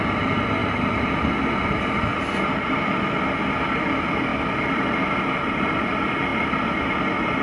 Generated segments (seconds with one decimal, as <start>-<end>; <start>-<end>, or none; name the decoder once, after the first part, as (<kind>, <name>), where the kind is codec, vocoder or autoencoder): 2.1-2.7 (vocoder, BigVGAN v2)